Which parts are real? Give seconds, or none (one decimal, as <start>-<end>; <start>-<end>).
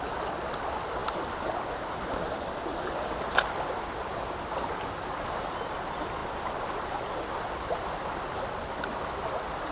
0.0-1.0; 5.5-6.2; 9.0-9.7